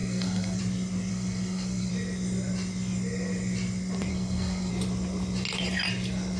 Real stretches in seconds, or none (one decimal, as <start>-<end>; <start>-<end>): 0.6-1.1; 1.9-4.1; 4.7-6.4